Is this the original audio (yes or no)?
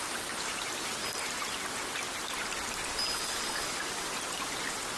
yes